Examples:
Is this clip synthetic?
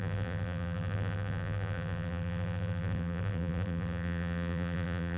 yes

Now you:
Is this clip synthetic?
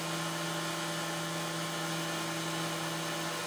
no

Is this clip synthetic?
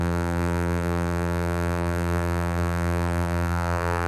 yes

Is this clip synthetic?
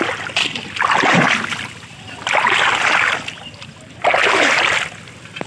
no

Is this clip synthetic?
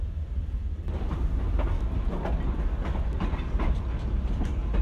no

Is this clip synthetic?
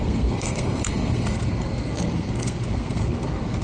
yes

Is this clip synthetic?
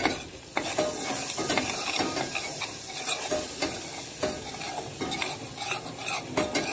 no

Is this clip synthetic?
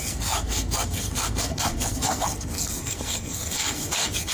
yes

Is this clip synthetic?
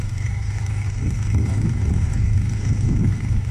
yes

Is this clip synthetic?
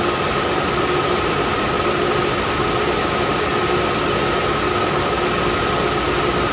no